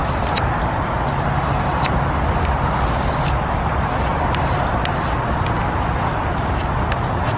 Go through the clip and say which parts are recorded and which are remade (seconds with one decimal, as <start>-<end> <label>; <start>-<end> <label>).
0.0-2.1 remade; 2.1-4.1 recorded; 4.1-6.6 remade; 6.6-7.4 recorded